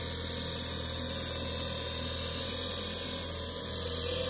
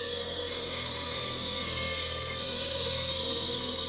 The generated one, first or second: second